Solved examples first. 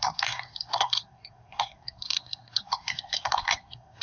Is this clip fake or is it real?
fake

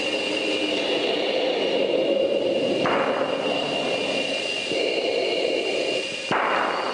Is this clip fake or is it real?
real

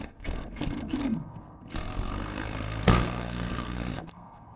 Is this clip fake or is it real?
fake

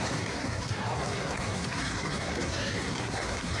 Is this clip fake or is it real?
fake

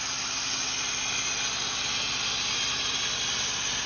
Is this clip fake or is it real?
real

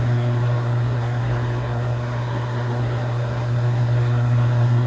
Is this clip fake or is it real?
fake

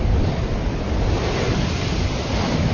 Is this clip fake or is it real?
real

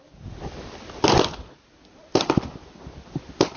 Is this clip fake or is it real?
real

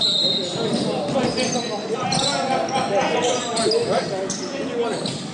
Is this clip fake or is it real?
real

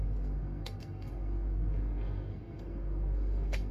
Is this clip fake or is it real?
fake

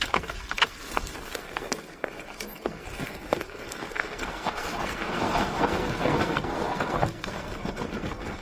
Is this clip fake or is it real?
fake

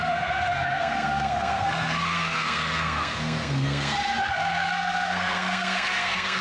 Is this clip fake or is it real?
fake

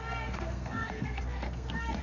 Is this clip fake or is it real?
fake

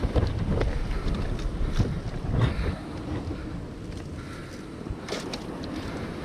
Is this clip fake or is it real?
real